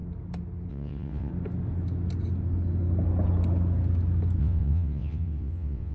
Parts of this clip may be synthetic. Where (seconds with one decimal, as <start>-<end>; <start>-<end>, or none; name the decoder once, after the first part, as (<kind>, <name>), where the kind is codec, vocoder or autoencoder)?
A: 0.7-1.3 (vocoder, WaveNeXt); 4.4-5.9